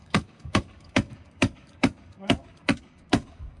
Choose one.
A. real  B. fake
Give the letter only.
B